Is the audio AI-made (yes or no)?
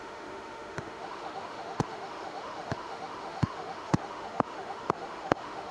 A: yes